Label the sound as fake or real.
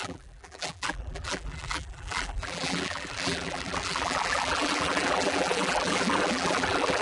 fake